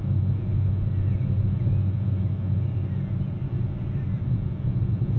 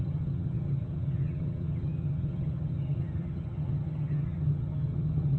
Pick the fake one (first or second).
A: second